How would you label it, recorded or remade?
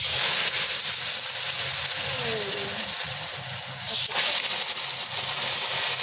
recorded